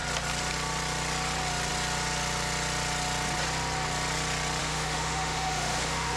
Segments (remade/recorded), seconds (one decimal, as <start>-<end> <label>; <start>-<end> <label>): 0.0-4.6 recorded; 4.6-6.2 remade